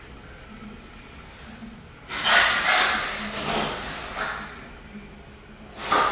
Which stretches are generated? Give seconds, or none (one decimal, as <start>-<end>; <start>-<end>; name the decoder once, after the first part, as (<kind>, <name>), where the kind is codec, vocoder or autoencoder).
none